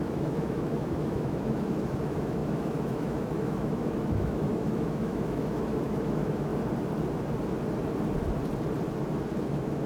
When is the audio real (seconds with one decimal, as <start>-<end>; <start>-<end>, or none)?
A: 6.5-9.4